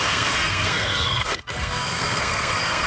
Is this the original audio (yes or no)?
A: no